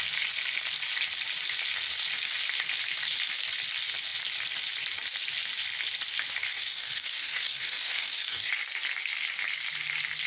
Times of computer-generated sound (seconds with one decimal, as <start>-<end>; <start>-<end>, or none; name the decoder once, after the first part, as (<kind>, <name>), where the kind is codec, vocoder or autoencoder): 6.5-8.5 (codec, DAC)